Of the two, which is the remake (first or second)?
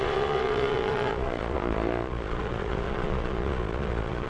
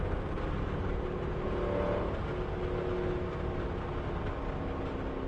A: first